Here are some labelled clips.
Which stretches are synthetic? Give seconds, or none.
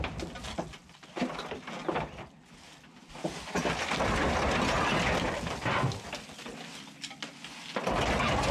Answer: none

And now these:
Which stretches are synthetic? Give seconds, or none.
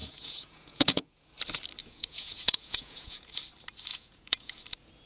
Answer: 0.0-1.3 (vocoder, Vocos); 1.8-3.3; 3.9-4.5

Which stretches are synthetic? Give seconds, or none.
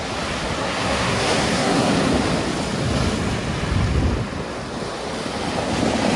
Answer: 0.6-1.9 (codec, SNAC)